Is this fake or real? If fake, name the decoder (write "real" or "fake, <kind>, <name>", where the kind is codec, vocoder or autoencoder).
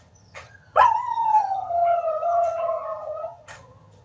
fake, vocoder, HiFi-GAN